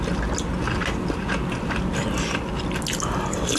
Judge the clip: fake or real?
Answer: real